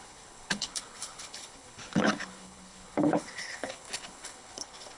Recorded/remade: remade